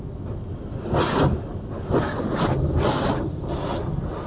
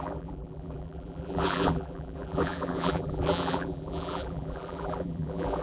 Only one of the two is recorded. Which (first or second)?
first